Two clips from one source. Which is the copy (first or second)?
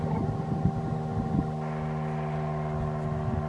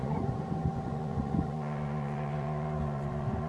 second